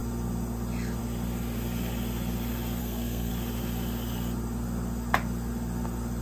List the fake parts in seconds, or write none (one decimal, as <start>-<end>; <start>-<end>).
2.8-3.3